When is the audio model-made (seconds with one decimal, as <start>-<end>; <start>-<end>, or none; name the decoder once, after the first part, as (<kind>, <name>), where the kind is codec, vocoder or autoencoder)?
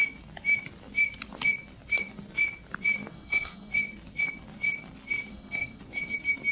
3.1-3.7 (codec, SNAC); 5.3-5.8